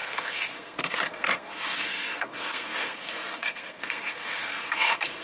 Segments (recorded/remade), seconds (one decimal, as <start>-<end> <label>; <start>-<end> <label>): 0.0-5.2 remade